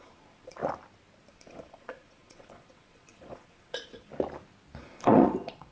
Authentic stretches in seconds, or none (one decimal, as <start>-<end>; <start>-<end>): 0.6-1.3; 4.1-4.8